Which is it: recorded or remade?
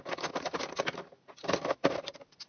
recorded